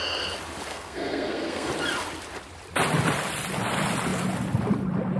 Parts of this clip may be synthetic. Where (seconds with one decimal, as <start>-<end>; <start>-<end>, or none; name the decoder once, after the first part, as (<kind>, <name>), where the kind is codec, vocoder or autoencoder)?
0.7-1.7 (codec, SNAC)